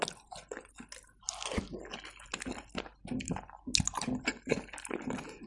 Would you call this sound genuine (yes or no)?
yes